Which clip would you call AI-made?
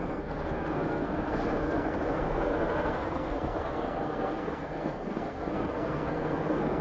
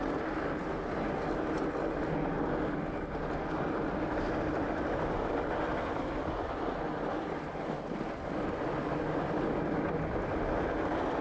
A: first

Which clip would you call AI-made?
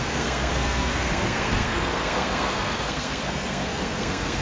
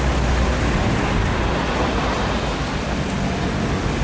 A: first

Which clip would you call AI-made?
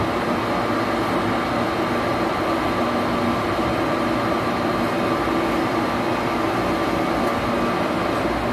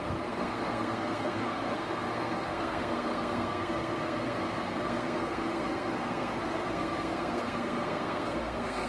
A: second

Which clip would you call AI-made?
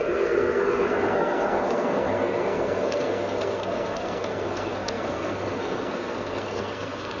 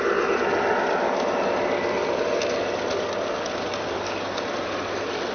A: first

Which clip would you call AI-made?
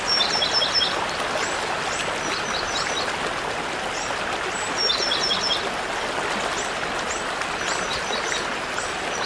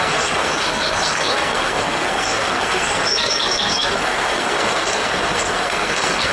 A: second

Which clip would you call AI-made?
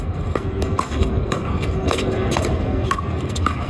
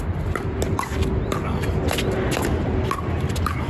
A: first